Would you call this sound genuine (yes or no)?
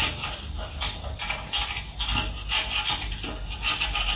yes